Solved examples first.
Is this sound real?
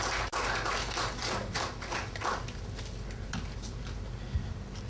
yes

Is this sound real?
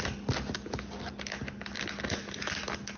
yes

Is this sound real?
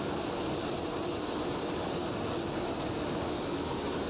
yes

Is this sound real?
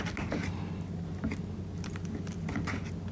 yes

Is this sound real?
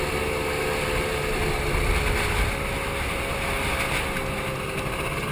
yes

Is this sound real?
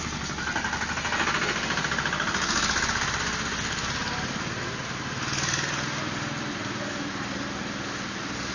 yes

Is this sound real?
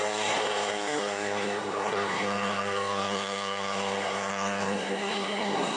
no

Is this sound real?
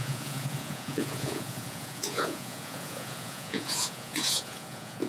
no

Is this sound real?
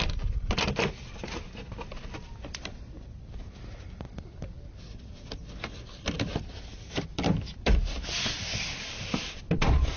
yes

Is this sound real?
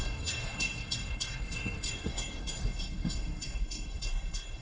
no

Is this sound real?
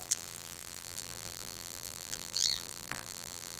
no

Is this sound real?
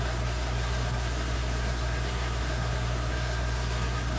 no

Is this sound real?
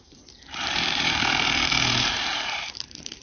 no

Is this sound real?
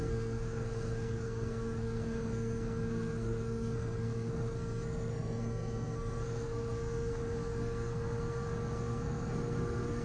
no